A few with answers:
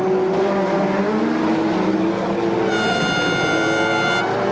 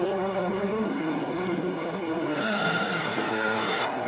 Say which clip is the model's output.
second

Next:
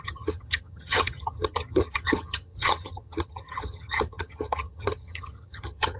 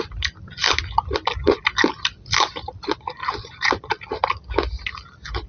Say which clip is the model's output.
first